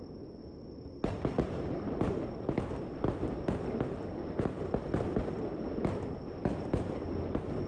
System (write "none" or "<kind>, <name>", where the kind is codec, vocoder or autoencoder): none